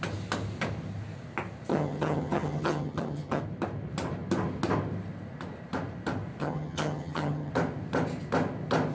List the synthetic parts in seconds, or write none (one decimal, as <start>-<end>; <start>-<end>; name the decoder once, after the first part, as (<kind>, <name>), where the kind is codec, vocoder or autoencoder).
1.7-3.4 (vocoder, HiFi-GAN); 6.4-7.5